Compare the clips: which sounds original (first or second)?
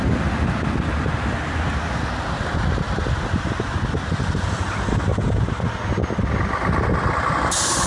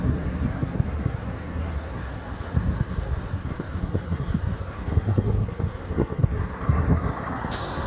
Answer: first